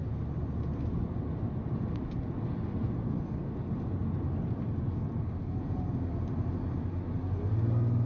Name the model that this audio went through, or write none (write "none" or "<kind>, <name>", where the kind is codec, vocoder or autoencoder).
none